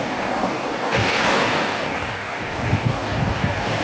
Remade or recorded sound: remade